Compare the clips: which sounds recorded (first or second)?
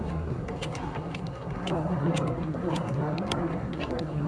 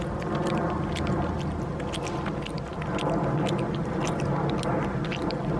second